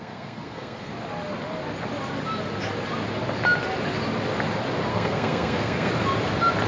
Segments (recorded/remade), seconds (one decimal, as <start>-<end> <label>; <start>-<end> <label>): 0.0-0.9 remade; 0.9-4.9 recorded; 4.9-5.9 remade; 5.9-6.7 recorded